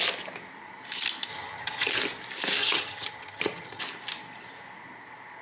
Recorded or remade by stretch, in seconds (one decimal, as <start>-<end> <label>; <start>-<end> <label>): 0.0-1.3 recorded; 1.3-1.9 remade; 1.9-2.6 recorded; 2.6-3.8 remade; 3.8-5.4 recorded